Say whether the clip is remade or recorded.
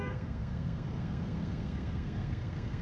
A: remade